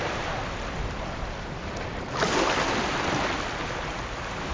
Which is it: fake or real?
real